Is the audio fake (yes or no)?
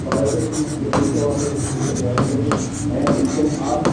no